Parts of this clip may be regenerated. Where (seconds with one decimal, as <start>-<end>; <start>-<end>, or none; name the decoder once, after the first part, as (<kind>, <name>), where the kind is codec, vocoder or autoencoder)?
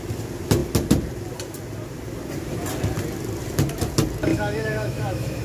4.3-5.4 (autoencoder, DAC-VAE)